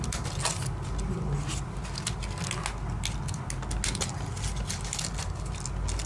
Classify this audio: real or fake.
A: real